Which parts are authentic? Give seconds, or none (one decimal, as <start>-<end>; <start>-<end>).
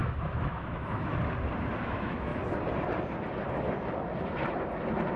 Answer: 1.1-1.8; 2.3-5.2